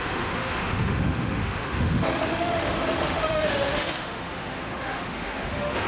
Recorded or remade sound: remade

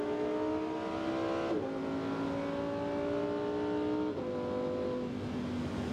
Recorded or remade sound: recorded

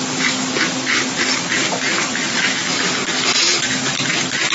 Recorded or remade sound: recorded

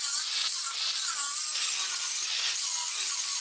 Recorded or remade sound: recorded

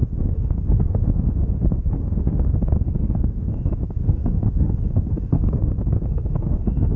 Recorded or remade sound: remade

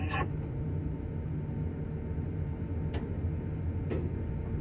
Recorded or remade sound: recorded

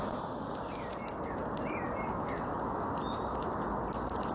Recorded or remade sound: recorded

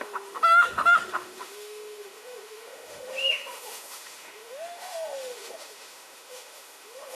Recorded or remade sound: remade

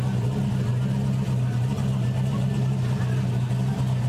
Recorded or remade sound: recorded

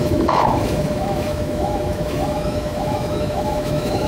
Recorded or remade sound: remade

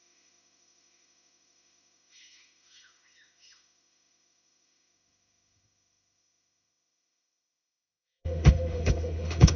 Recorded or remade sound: remade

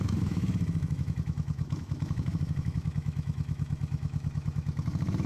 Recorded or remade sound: remade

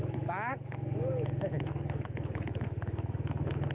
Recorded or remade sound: remade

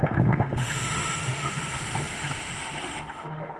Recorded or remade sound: remade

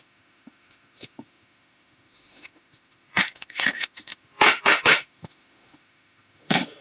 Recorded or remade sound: remade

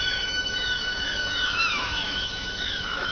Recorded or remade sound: remade